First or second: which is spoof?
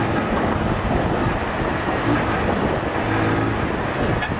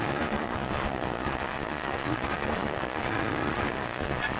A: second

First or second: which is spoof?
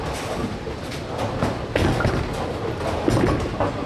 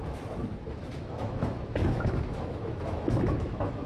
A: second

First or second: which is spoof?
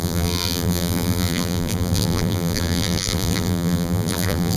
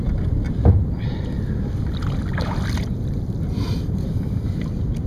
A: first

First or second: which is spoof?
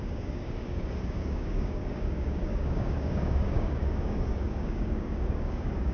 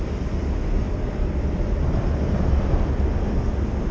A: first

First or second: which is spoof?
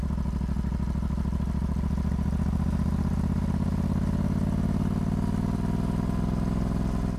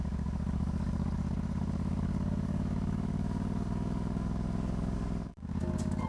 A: second